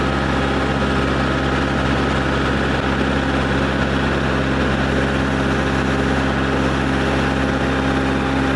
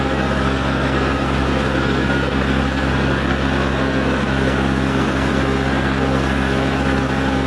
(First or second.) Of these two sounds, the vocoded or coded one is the second